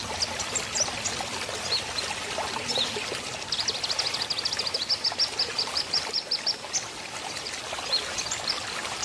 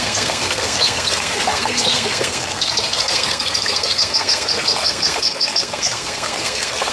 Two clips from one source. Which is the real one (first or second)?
first